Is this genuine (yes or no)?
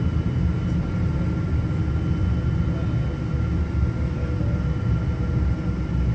yes